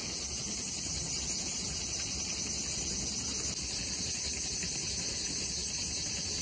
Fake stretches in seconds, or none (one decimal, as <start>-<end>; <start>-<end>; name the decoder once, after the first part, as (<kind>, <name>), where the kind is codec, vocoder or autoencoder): none